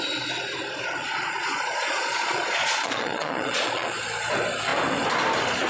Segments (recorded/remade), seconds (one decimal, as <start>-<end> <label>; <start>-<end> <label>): 0.0-1.0 recorded; 1.0-4.0 remade; 4.0-5.7 recorded